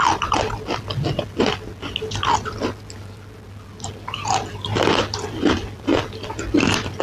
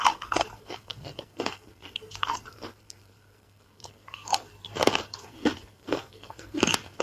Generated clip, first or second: second